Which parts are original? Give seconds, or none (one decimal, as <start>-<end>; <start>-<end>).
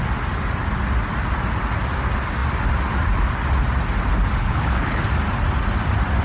0.0-4.4; 5.0-6.2